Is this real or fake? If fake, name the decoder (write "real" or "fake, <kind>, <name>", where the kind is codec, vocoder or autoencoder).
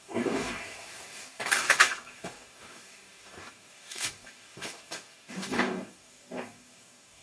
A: fake, codec, DAC